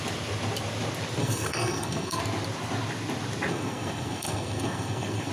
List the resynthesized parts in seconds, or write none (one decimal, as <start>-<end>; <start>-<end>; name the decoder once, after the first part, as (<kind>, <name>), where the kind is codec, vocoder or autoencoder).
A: 1.2-2.2 (codec, SNAC); 3.5-5.3

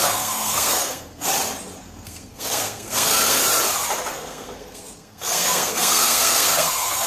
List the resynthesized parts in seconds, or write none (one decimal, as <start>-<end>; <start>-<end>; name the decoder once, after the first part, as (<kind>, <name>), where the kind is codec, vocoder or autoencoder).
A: 0.0-1.3 (codec, SNAC); 1.8-3.4; 4.1-7.1

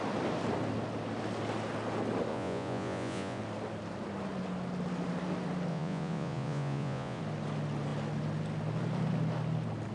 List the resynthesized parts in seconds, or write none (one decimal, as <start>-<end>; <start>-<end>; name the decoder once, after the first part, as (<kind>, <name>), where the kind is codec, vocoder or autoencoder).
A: 2.3-3.4 (vocoder, Vocos); 5.7-7.2

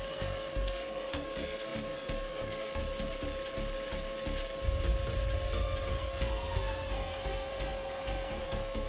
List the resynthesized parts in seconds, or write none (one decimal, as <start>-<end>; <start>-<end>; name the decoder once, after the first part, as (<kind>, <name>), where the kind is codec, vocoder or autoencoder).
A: 0.0-2.8 (codec, SNAC); 5.9-8.9

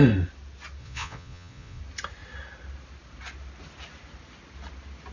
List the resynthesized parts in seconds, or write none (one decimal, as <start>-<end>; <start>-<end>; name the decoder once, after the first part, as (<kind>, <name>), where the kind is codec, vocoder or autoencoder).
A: 0.8-1.8 (vocoder, Vocos)

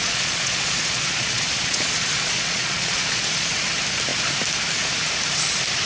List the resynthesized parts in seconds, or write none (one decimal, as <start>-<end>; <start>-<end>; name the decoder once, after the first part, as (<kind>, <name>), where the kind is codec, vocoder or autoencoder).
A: 0.0-3.5 (vocoder, Vocos)

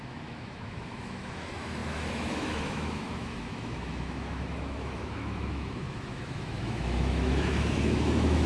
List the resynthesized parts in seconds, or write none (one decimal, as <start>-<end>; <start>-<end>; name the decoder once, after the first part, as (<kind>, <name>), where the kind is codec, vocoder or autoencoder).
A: 0.0-8.5 (autoencoder, DAC-VAE)

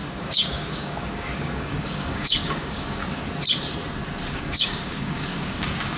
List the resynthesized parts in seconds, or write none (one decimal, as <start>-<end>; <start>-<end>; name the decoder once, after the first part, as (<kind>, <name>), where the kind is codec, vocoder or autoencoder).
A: 0.0-3.0 (codec, DAC); 4.3-6.0